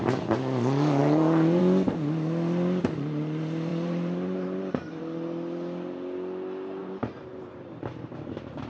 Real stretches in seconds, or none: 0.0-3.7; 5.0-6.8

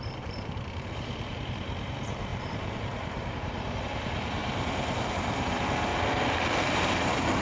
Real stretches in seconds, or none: 5.9-6.6

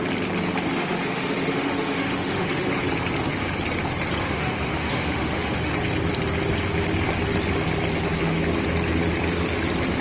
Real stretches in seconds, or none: 0.0-0.7; 2.8-4.2; 5.7-10.0

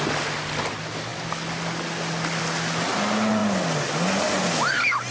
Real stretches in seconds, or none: 0.0-5.1

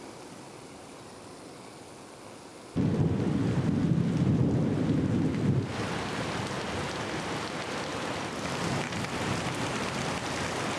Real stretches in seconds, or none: 0.0-10.8

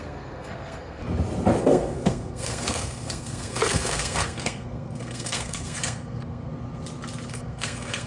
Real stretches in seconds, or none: 1.0-1.6; 6.5-7.3

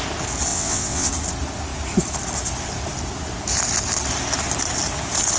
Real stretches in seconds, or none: 0.0-0.5; 1.1-5.4

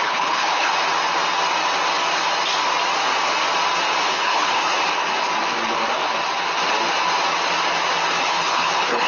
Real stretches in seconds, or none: 0.7-4.0; 4.8-8.1